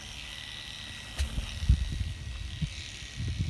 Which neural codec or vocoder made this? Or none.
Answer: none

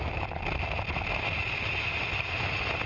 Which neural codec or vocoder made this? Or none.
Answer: none